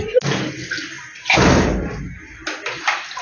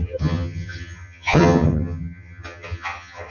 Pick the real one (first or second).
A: first